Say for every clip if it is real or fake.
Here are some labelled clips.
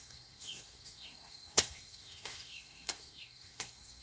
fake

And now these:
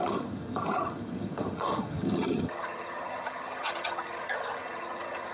fake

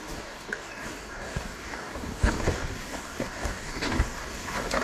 fake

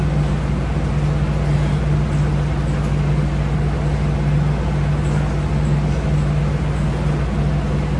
real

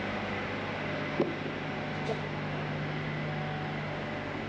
real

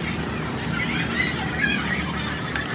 real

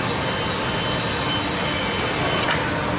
real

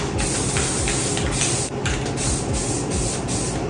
real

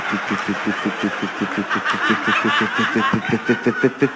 real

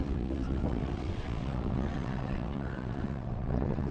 fake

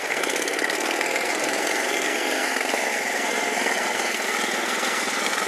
fake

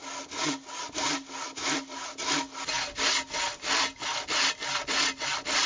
real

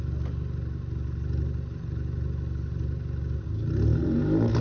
real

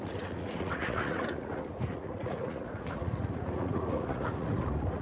fake